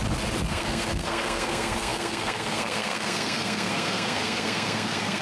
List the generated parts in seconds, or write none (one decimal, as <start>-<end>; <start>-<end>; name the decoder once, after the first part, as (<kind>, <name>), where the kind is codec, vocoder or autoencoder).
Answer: 0.5-5.2 (codec, SNAC)